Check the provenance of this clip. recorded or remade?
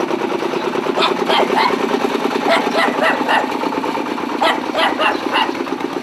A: recorded